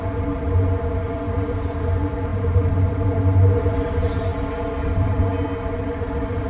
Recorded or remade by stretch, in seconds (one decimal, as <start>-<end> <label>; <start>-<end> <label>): 0.0-6.5 remade